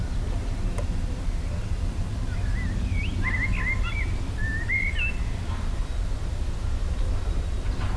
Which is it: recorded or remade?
recorded